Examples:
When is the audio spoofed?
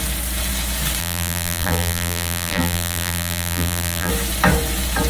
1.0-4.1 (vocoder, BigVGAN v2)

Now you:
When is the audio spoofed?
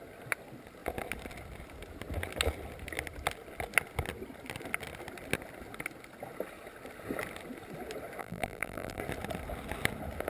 8.2-9.0 (vocoder, BigVGAN v2)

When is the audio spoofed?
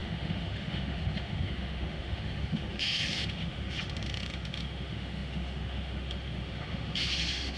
0.0-7.6 (autoencoder, DAC-VAE)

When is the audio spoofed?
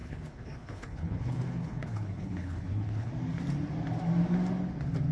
0.0-3.1 (codec, HILCodec)